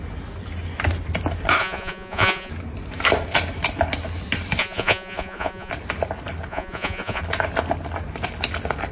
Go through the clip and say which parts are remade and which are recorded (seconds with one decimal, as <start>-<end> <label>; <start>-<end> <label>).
0.0-1.6 recorded; 1.6-2.5 remade; 2.5-4.6 recorded; 4.6-5.7 remade; 5.7-6.5 recorded; 6.5-7.2 remade; 7.2-8.9 recorded